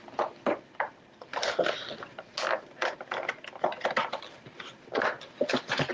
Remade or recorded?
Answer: recorded